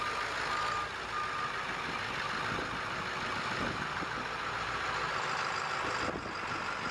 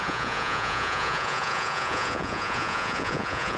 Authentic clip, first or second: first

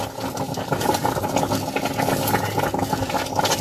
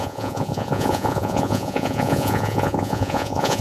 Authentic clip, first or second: first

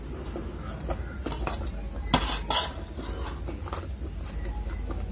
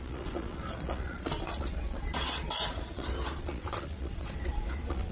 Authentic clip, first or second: first